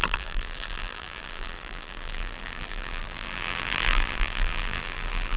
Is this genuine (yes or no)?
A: no